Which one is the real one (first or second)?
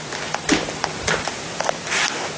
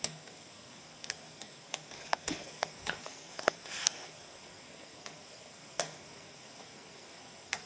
first